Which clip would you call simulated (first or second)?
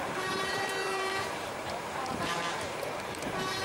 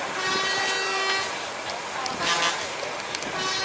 first